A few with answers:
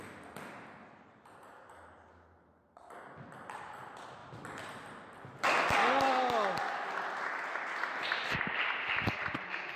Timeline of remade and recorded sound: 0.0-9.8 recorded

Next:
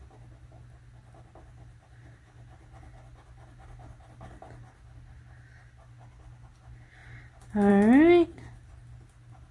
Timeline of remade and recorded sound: 0.0-9.5 recorded

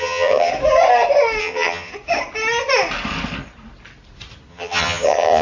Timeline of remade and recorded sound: 0.0-0.5 remade; 0.5-1.4 recorded; 1.4-1.9 remade; 1.9-4.5 recorded; 4.5-5.4 remade

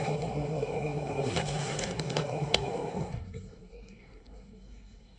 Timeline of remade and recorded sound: 0.0-5.2 remade